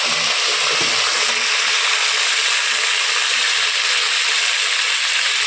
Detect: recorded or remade recorded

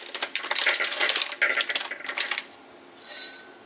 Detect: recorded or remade recorded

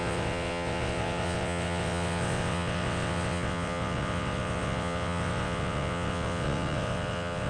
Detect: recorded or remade remade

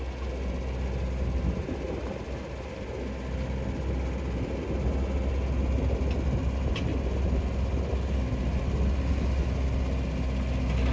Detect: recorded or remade recorded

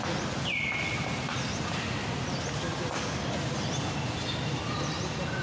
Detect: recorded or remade recorded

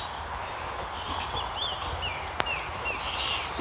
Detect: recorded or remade recorded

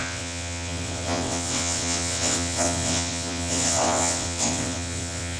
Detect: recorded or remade remade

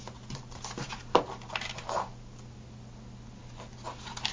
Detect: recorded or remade recorded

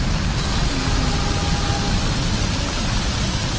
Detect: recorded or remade recorded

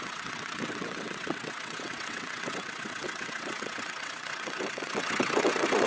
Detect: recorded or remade remade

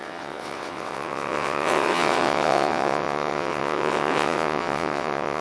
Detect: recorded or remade remade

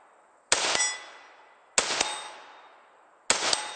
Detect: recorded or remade recorded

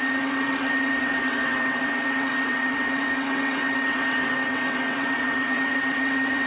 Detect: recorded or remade remade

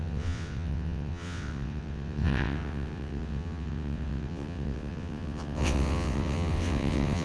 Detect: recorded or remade remade